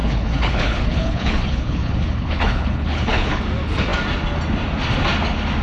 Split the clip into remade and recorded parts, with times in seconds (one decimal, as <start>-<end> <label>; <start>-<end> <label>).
0.0-3.4 remade; 3.4-5.6 recorded